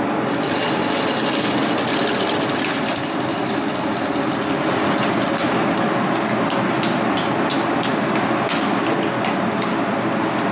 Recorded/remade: recorded